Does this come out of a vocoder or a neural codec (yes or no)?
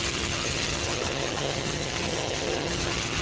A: yes